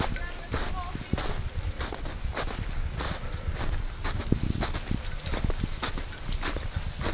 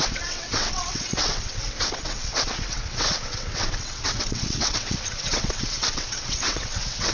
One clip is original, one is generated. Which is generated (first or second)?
second